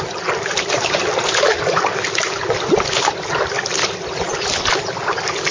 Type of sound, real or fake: real